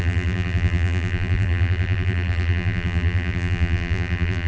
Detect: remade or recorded remade